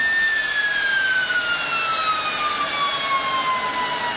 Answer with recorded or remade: recorded